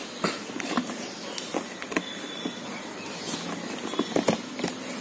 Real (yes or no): yes